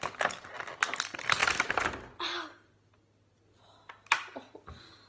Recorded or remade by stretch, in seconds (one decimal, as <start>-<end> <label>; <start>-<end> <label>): 0.0-5.1 recorded